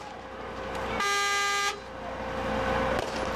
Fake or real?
real